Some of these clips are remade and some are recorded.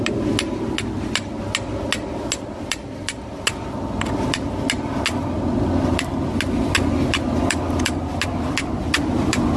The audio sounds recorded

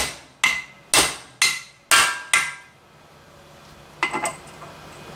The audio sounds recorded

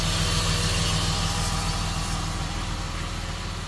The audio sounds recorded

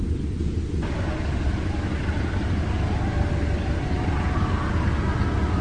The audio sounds recorded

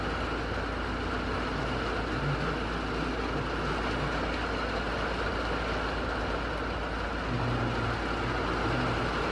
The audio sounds recorded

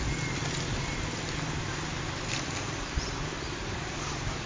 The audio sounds recorded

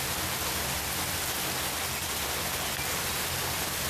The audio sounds recorded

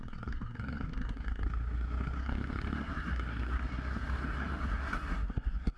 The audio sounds remade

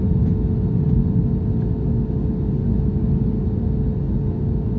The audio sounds recorded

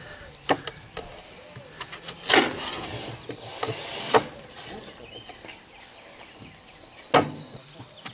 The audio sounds recorded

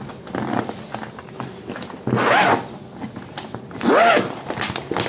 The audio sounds recorded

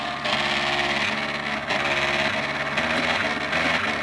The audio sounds recorded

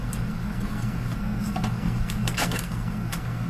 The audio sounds remade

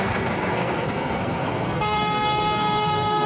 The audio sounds remade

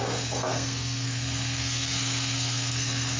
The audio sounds remade